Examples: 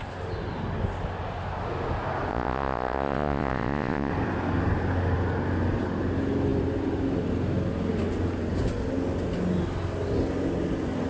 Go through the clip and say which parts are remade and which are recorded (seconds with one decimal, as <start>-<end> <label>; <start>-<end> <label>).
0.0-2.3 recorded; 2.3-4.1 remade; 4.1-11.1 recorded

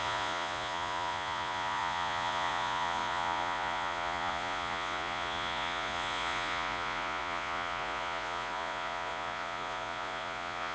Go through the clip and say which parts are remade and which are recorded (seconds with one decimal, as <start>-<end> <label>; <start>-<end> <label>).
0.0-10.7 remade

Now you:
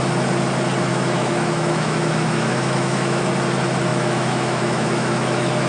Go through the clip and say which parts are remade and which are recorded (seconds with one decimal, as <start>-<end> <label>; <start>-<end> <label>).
0.0-0.9 recorded; 0.9-3.2 remade; 3.2-3.9 recorded; 3.9-5.7 remade

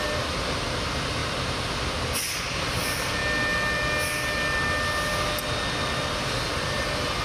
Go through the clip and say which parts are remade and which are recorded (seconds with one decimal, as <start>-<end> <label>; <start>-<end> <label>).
0.0-7.2 recorded

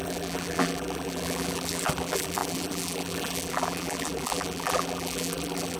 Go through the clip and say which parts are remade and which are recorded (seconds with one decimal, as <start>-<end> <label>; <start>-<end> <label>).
0.0-5.8 remade